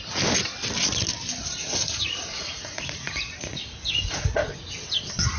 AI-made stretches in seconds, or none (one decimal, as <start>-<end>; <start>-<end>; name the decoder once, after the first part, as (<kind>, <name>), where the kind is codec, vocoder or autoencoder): 1.6-4.8 (vocoder, Vocos)

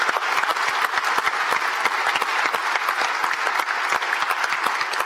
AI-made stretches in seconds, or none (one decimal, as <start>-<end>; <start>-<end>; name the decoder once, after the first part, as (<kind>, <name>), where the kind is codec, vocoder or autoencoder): none

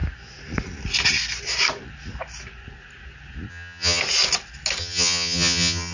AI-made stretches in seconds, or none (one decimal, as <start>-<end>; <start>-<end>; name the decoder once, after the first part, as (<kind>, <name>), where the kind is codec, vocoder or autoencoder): 3.5-4.0 (vocoder, HiFi-GAN); 4.8-5.9

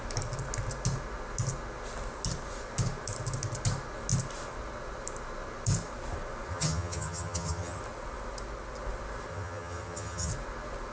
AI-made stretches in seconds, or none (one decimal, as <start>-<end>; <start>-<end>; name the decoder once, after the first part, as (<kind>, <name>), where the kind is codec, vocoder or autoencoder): 6.5-7.8 (vocoder, HiFi-GAN); 9.3-10.3

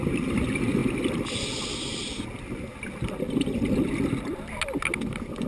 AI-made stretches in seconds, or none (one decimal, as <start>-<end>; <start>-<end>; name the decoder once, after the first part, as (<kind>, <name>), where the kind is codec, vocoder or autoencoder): none